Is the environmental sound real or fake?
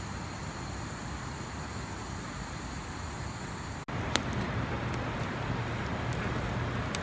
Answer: real